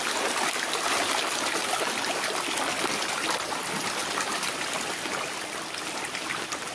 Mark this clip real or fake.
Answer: real